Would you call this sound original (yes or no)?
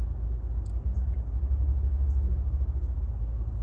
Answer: yes